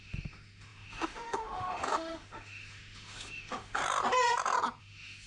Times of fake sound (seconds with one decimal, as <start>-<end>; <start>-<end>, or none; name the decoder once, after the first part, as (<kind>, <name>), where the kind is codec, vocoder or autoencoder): 0.0-3.8 (autoencoder, DAC-VAE); 4.8-5.3